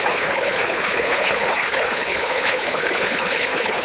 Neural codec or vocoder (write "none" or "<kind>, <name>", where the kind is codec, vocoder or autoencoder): codec, HILCodec